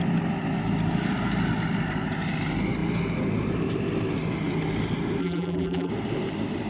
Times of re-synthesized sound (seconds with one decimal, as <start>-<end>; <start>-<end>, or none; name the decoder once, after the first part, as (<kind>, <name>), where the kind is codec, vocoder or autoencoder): 5.2-5.9 (vocoder, BigVGAN v2)